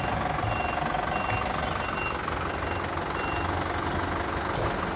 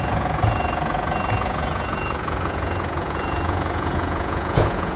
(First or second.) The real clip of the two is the first